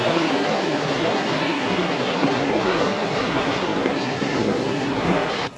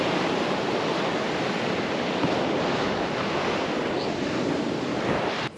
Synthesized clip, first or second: first